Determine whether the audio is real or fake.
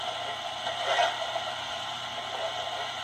real